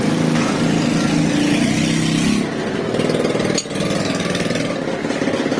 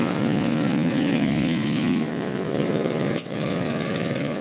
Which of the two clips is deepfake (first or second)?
second